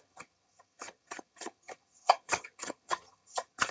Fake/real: fake